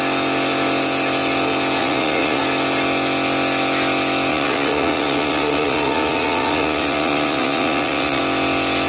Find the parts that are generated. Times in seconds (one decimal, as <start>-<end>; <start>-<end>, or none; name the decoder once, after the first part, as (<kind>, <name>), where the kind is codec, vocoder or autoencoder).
1.8-2.4 (vocoder, Vocos); 4.3-8.2